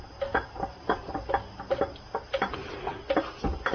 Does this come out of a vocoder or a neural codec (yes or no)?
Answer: no